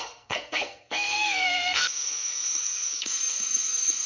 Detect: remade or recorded remade